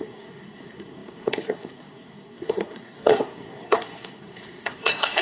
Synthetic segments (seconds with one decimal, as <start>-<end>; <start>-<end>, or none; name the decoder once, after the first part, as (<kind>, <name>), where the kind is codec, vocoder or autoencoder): 0.0-5.2 (codec, SNAC)